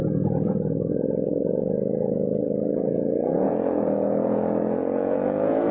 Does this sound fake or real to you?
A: fake